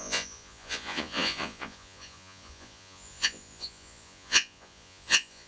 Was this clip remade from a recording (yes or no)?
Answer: yes